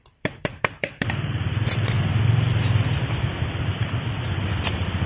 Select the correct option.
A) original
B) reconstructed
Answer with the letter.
B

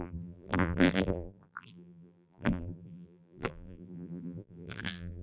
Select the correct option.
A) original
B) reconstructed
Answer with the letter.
B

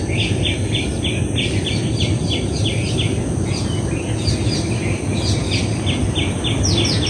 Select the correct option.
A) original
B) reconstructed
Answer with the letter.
A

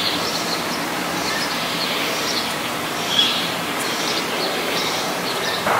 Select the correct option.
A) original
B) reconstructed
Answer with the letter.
B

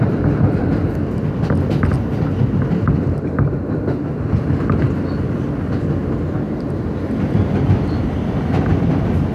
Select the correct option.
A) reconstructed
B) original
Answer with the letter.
B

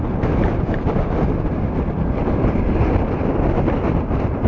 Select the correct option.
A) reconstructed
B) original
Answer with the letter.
A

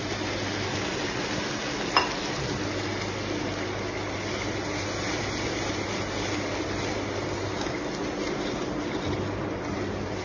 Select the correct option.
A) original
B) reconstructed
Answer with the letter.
A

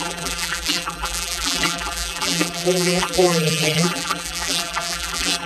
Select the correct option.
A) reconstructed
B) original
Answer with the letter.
A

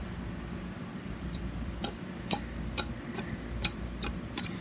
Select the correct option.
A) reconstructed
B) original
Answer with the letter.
A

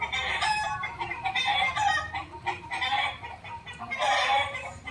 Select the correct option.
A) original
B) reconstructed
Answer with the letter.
B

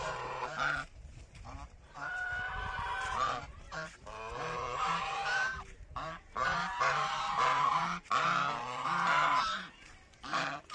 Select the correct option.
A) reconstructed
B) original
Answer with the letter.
A